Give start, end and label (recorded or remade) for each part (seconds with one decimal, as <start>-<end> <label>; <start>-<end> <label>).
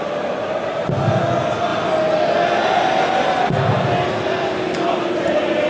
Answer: 0.0-5.7 recorded